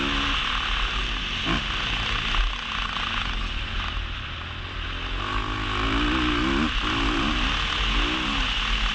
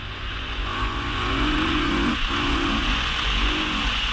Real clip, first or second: first